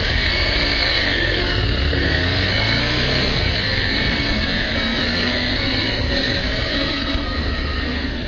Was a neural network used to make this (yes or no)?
yes